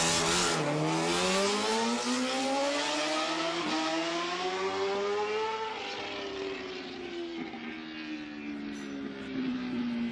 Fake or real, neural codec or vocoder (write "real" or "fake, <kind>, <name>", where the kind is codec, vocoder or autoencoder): real